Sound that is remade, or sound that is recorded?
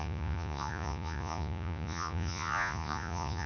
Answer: remade